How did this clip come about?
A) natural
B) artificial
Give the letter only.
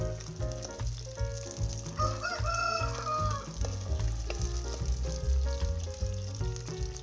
A